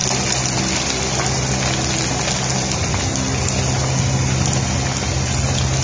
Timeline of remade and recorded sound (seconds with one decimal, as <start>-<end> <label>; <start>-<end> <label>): 0.0-5.8 recorded